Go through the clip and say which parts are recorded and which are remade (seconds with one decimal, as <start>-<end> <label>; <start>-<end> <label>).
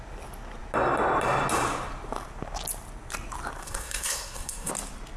0.0-3.6 recorded; 3.6-4.7 remade; 4.7-5.2 recorded